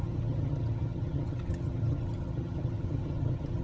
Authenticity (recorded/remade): remade